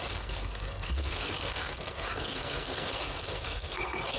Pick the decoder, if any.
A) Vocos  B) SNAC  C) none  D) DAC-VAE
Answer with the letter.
B